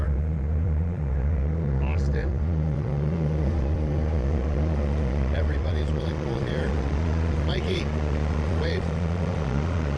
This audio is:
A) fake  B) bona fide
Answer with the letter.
A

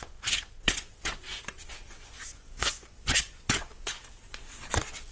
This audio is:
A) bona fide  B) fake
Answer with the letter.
B